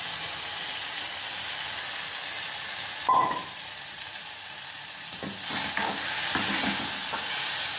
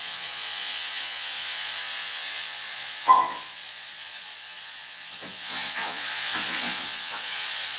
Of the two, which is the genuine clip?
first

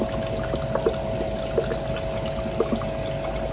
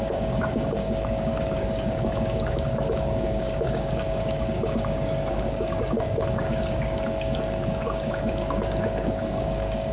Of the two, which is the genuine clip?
first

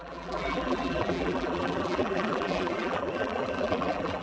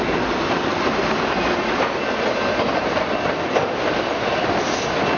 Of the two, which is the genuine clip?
second